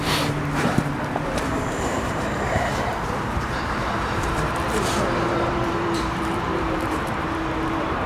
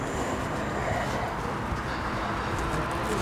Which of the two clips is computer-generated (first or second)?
first